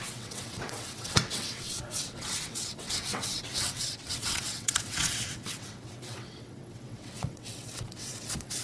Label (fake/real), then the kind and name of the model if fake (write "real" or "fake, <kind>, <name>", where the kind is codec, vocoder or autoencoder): fake, vocoder, WaveNeXt